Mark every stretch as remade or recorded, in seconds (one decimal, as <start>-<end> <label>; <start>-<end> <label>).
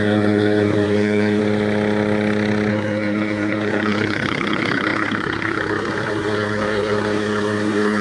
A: 0.0-1.4 remade; 1.4-2.7 recorded; 2.7-8.0 remade